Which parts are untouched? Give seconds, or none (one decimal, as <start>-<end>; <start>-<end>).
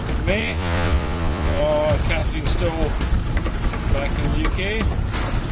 0.0-0.4; 1.6-5.5